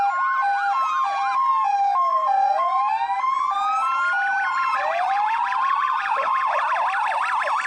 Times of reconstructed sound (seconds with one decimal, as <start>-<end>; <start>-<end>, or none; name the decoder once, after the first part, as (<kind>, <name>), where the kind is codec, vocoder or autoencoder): 2.1-2.8 (vocoder, Vocos); 4.5-6.6